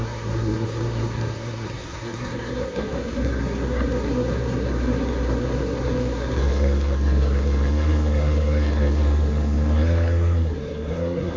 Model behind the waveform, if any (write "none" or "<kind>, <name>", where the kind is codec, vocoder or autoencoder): codec, SNAC